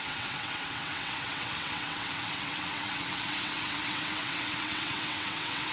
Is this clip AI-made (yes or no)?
yes